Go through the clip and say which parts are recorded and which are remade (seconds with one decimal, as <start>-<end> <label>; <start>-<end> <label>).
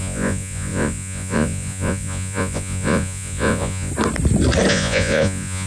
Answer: 0.0-3.9 remade; 3.9-4.7 recorded; 4.7-5.7 remade